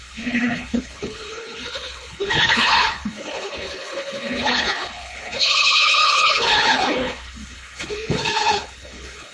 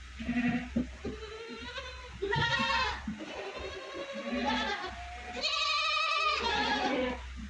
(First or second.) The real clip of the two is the second